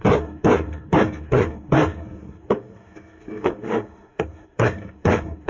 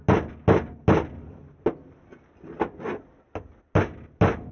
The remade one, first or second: first